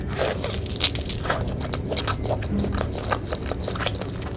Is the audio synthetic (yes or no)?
no